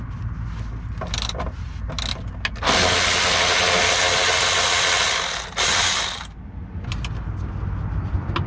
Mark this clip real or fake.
real